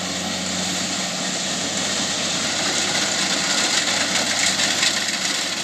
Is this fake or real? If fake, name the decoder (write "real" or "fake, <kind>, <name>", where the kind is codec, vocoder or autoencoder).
real